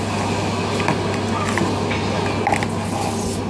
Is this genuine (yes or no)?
yes